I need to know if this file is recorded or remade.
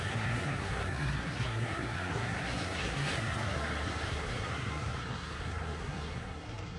remade